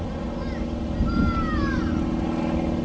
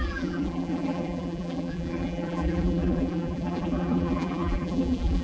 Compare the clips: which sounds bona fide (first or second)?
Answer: first